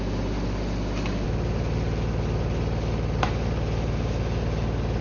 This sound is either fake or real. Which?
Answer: real